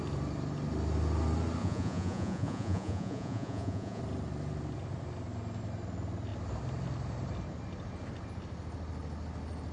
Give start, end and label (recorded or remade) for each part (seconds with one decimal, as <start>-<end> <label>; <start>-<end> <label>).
0.0-1.6 recorded; 1.6-4.0 remade; 4.0-9.7 recorded

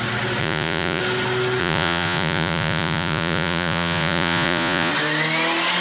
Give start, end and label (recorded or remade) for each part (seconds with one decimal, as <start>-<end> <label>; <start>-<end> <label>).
0.0-0.4 recorded; 0.4-1.0 remade; 1.0-1.6 recorded; 1.6-4.9 remade; 4.9-5.8 recorded